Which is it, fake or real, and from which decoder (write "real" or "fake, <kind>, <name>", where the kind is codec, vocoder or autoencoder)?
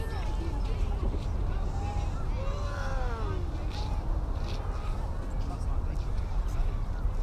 real